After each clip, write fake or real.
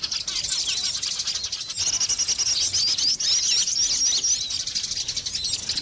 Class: real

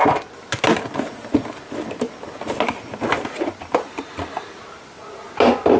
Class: real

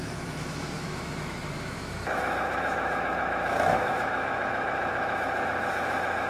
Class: fake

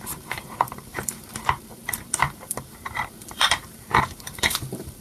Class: fake